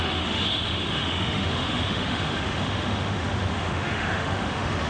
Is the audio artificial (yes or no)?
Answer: yes